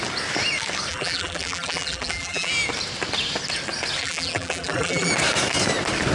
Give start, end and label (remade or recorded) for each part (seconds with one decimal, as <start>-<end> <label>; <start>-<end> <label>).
0.0-0.9 recorded; 0.9-2.5 remade; 2.5-4.0 recorded; 4.0-5.1 remade; 5.1-6.1 recorded